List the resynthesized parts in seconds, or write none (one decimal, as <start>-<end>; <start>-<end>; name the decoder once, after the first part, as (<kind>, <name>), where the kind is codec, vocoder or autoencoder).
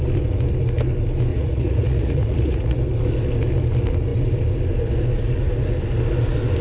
1.3-2.8 (vocoder, Vocos)